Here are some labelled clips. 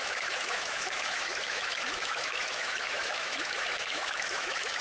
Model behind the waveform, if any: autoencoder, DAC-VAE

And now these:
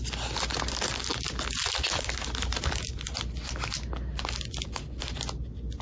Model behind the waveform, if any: none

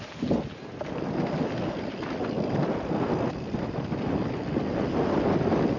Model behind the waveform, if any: none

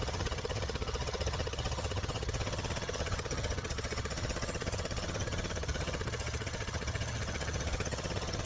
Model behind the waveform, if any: vocoder, HiFi-GAN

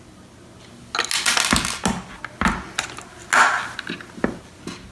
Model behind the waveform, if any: none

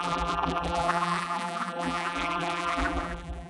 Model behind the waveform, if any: vocoder, BigVGAN v2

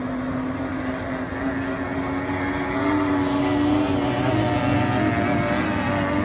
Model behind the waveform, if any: none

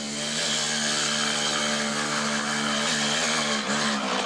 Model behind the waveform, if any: none